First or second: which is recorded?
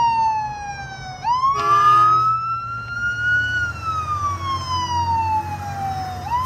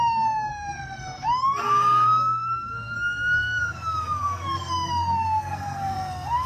first